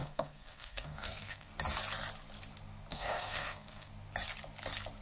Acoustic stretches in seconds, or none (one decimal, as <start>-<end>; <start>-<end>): 1.5-2.9; 3.9-5.0

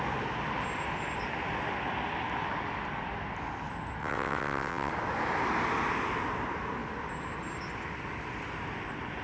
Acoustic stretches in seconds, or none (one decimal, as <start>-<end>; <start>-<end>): 0.0-4.0; 4.9-9.2

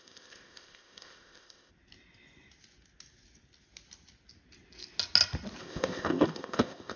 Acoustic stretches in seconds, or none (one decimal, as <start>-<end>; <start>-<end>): 1.7-5.6

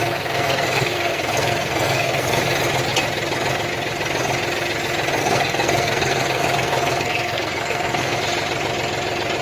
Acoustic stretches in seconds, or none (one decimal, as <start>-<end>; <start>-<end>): 2.4-5.2; 8.2-9.4

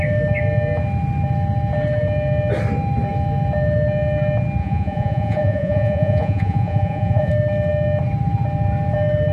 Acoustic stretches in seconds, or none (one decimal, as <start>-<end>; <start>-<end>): 0.0-4.6; 7.3-9.3

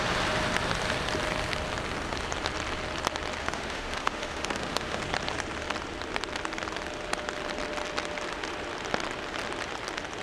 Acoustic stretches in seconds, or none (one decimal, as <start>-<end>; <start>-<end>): 0.0-3.4; 5.0-10.2

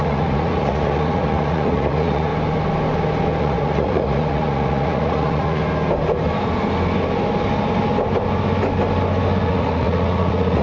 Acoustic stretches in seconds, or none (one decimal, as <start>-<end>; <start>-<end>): 2.3-3.4; 5.6-9.4

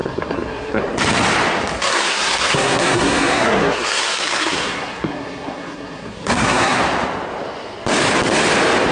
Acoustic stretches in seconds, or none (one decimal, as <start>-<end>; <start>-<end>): 0.8-1.8; 6.8-8.9